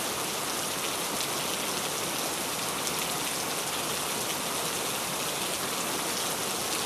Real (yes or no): yes